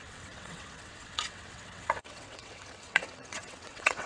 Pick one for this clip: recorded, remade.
remade